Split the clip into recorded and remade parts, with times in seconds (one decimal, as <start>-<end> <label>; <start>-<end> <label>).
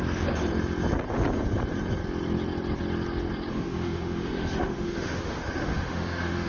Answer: 0.0-3.5 recorded; 3.5-6.5 remade